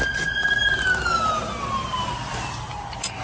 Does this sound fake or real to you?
real